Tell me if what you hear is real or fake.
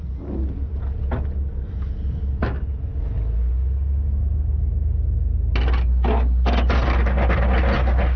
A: real